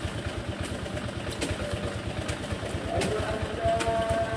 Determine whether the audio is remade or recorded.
recorded